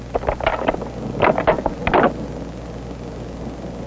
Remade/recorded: recorded